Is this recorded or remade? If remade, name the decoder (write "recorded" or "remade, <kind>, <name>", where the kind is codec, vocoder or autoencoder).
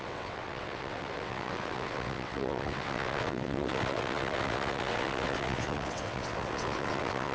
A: remade, vocoder, WaveNeXt